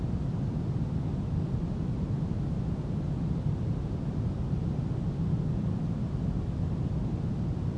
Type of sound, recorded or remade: recorded